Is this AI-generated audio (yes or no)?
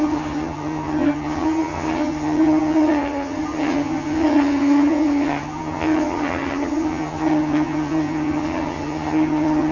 yes